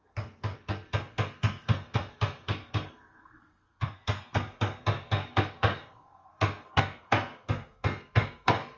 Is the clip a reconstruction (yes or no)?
yes